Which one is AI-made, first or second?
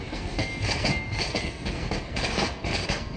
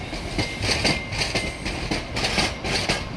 first